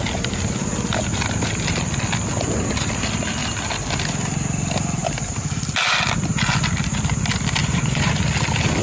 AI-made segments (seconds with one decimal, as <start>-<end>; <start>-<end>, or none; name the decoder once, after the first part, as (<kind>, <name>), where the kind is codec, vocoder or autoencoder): 7.6-8.1 (vocoder, Vocos)